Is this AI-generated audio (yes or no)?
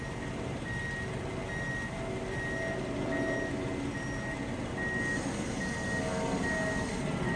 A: no